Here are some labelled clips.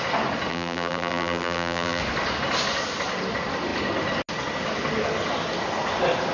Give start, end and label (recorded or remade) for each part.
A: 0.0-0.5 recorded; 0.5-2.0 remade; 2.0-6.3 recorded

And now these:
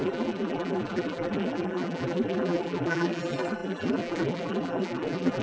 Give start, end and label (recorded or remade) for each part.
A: 0.0-5.4 remade

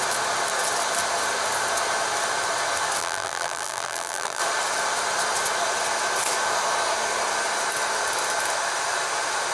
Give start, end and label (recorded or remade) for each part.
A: 0.0-3.0 recorded; 3.0-4.4 remade; 4.4-9.5 recorded

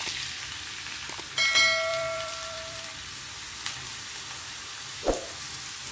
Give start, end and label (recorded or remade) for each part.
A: 0.0-1.9 recorded; 1.9-5.4 remade; 5.4-5.9 recorded

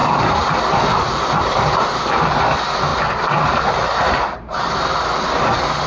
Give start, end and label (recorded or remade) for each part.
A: 0.0-2.4 remade; 2.4-2.9 recorded; 2.9-5.2 remade; 5.2-5.9 recorded

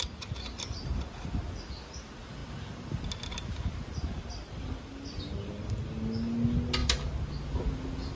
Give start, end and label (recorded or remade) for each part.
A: 0.0-8.2 recorded

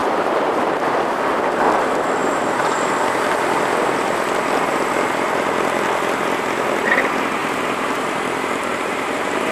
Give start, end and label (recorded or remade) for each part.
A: 0.0-1.2 remade; 1.2-2.2 recorded; 2.2-3.3 remade; 3.3-7.4 recorded; 7.4-9.5 remade